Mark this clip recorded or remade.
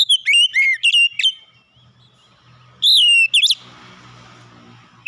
recorded